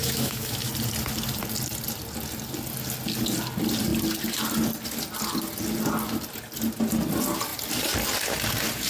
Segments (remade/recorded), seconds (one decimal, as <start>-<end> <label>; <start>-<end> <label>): 0.0-0.7 remade; 0.7-8.9 recorded